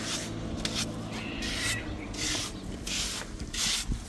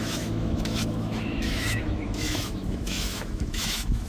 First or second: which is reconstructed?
second